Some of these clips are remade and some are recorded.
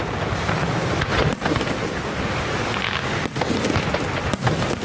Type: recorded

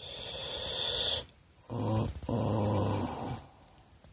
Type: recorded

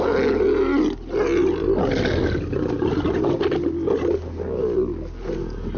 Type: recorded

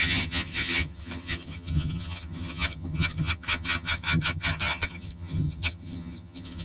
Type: remade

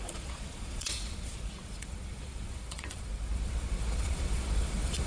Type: remade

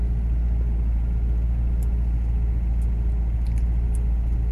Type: recorded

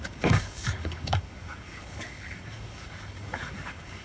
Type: remade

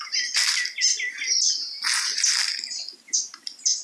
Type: recorded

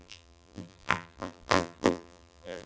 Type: remade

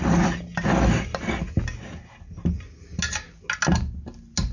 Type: recorded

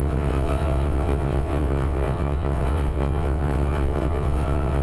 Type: remade